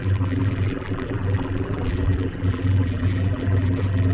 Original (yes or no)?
no